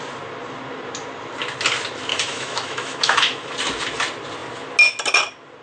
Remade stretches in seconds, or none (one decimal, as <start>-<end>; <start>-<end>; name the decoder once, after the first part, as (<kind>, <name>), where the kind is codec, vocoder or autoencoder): 2.1-3.5 (autoencoder, DAC-VAE)

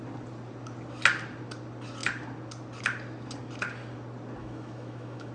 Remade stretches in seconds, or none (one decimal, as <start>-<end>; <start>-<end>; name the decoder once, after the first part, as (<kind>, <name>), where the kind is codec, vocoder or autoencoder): 4.4-5.3 (autoencoder, DAC-VAE)

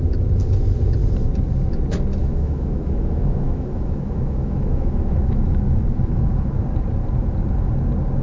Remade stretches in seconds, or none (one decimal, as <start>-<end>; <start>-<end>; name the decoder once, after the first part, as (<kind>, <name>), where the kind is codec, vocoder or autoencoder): 2.2-6.5 (autoencoder, DAC-VAE)

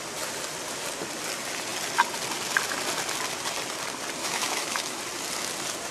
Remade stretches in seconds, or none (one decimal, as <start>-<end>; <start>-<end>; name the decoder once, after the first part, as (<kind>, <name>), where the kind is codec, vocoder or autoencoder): 4.2-5.0 (autoencoder, DAC-VAE)